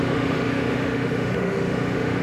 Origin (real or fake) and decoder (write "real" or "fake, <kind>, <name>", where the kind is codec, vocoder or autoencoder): fake, autoencoder, DAC-VAE